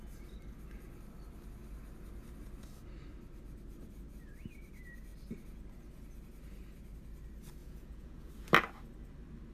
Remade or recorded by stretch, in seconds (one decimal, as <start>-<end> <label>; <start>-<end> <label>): 0.0-7.6 recorded; 7.6-8.3 remade; 8.3-9.5 recorded